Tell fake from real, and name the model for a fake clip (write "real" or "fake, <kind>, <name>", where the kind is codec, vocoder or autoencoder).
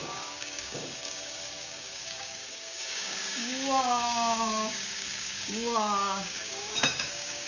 fake, codec, DAC